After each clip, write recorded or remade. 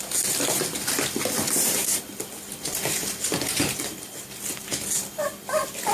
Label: recorded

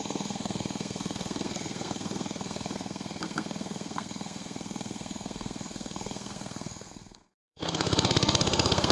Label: remade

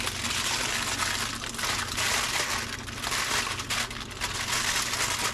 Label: recorded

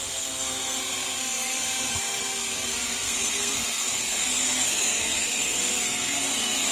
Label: remade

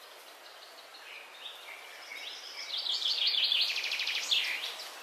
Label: recorded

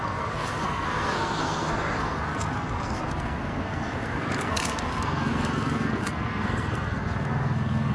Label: remade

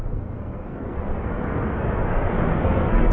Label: remade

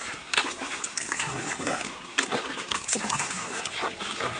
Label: remade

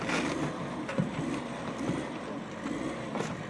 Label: recorded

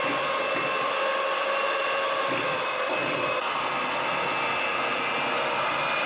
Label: recorded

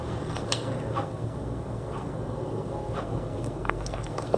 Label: remade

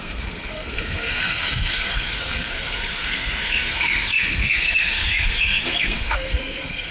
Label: remade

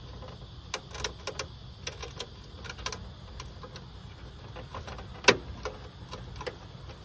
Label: recorded